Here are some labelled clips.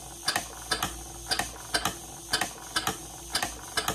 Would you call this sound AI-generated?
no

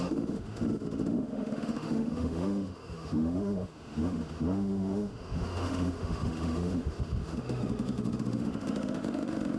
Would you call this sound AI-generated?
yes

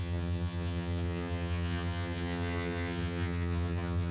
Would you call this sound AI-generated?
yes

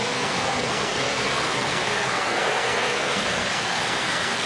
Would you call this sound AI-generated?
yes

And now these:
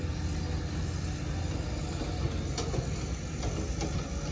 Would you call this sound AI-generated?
no